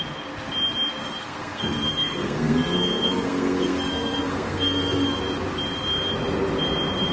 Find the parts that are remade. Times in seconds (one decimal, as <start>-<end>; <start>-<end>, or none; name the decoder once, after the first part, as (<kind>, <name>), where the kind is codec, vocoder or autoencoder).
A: 1.0-5.2 (codec, SNAC)